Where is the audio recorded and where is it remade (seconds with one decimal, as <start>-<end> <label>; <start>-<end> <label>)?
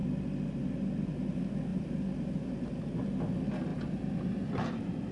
0.0-1.7 recorded; 1.7-2.3 remade; 2.3-3.7 recorded; 3.7-5.1 remade